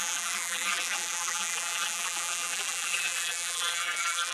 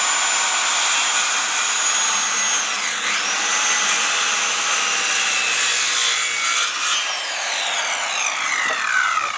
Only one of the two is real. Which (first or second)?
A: second